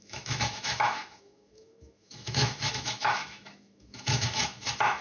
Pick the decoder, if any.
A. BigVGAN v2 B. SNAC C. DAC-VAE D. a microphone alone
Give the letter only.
C